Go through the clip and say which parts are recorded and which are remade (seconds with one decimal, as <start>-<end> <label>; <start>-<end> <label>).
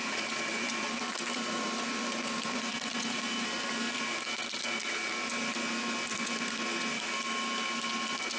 0.0-4.0 remade; 4.0-8.4 recorded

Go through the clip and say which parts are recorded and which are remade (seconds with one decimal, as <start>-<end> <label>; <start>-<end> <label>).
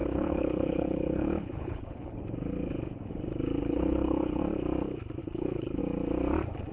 0.0-2.2 remade; 2.2-3.6 recorded; 3.6-4.4 remade; 4.4-5.2 recorded; 5.2-5.8 remade; 5.8-6.7 recorded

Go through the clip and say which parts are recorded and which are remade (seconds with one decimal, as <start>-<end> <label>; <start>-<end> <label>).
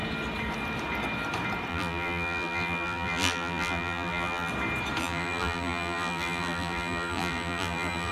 0.0-1.7 recorded; 1.7-4.5 remade; 4.5-5.0 recorded; 5.0-8.1 remade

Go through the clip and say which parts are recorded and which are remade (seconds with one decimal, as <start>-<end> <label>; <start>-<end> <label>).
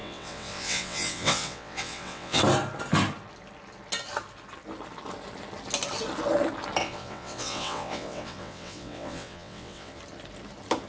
0.0-2.4 remade; 2.4-6.8 recorded; 6.8-10.0 remade; 10.0-10.9 recorded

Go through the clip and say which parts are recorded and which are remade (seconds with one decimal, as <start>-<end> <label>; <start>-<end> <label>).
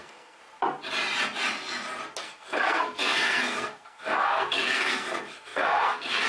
0.0-0.4 remade; 0.4-2.2 recorded; 2.2-6.3 remade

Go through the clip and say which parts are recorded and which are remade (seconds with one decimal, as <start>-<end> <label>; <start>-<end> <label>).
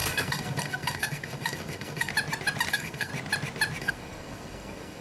0.0-2.1 remade; 2.1-2.7 recorded; 2.7-3.1 remade; 3.1-3.8 recorded; 3.8-5.0 remade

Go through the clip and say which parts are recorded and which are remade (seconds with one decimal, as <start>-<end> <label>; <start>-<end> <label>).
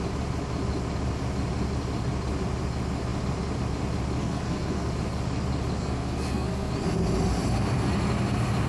0.0-4.2 recorded; 4.2-4.9 remade; 4.9-5.8 recorded; 5.8-6.7 remade; 6.7-8.7 recorded